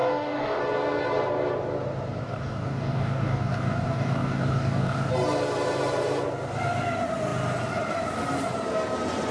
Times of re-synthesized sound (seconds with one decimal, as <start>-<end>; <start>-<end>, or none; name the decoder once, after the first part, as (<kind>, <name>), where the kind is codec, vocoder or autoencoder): 0.0-0.6 (codec, DAC); 2.2-5.1